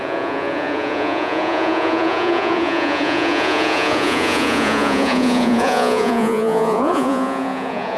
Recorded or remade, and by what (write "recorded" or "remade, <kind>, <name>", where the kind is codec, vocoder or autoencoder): remade, vocoder, Vocos